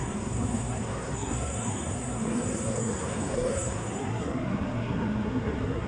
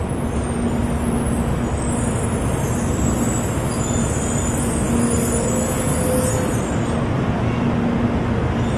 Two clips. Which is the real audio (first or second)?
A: second